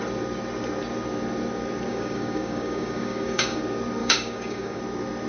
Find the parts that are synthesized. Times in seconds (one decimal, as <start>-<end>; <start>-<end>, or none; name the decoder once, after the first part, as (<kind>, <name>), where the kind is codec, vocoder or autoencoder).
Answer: 1.9-3.6 (codec, DAC); 4.0-4.8